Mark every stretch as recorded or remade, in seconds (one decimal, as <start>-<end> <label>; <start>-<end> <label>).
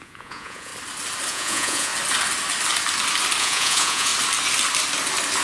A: 0.0-0.7 remade; 0.7-1.3 recorded; 1.3-1.9 remade; 1.9-3.4 recorded; 3.4-4.1 remade; 4.1-5.4 recorded